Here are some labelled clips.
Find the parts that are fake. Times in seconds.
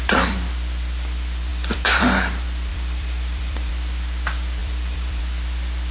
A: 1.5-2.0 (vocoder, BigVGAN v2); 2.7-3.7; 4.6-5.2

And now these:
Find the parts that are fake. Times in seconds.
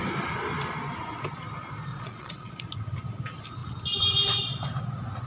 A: 1.9-2.5 (vocoder, Vocos)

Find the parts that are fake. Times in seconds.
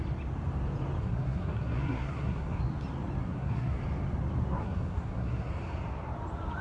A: 1.0-2.6 (codec, SNAC); 3.2-3.8; 4.6-5.5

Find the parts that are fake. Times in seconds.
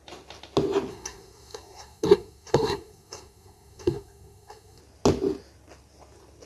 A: 0.9-4.8 (codec, SNAC)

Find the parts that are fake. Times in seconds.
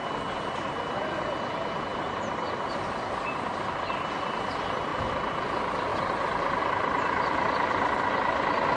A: 0.0-1.2 (vocoder, BigVGAN v2); 4.9-5.4; 5.9-6.6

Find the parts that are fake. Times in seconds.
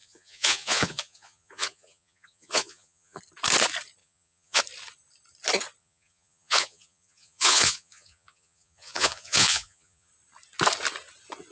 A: 0.0-3.2 (vocoder, Vocos); 4.0-4.6; 5.8-10.1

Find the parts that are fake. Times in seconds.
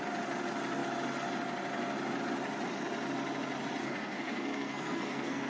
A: 3.8-5.5 (codec, SNAC)